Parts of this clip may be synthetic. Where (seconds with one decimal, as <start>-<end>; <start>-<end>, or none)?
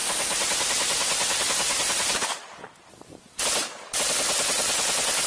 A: none